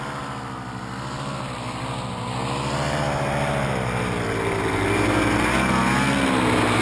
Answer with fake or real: real